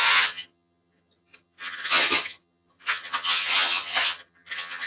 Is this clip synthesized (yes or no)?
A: yes